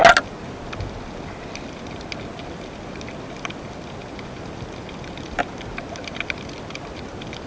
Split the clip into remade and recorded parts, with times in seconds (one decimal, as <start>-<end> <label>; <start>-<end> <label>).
0.0-7.5 recorded